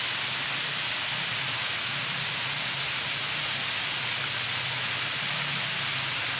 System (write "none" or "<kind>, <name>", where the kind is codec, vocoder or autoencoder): none